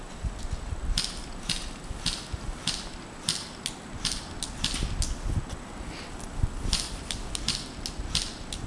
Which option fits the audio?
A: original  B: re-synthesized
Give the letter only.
A